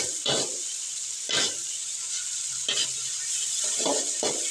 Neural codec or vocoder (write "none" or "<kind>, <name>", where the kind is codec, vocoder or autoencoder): none